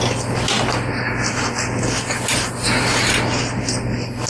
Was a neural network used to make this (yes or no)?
no